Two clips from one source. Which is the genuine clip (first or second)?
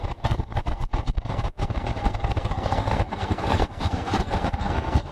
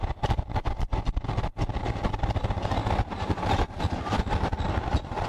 second